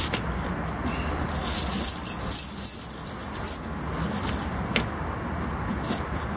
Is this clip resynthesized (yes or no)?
no